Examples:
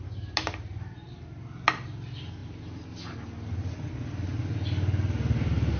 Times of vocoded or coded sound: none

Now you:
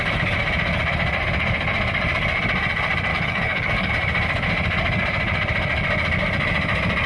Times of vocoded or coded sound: 3.1-3.9